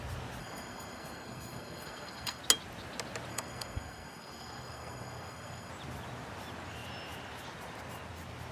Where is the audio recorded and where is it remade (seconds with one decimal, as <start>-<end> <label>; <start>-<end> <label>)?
0.0-0.4 recorded; 0.4-2.4 remade; 2.4-3.3 recorded; 3.3-5.7 remade; 5.7-8.5 recorded